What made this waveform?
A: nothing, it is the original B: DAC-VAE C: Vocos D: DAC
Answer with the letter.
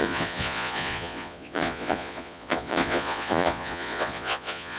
C